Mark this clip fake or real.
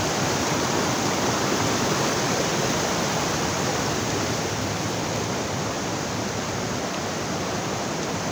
fake